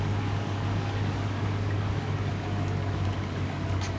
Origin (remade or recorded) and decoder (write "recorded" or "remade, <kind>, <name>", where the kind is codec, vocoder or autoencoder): remade, codec, DAC